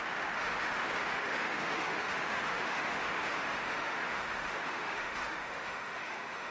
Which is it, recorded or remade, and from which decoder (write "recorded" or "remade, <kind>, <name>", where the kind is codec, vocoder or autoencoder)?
remade, autoencoder, DAC-VAE